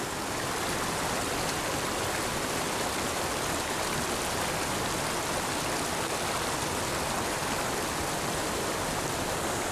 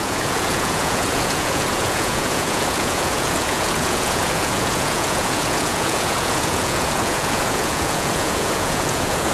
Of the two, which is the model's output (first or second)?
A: second